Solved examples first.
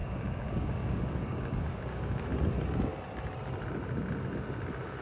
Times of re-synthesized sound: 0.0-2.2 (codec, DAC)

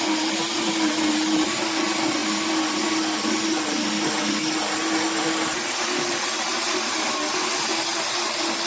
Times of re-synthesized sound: none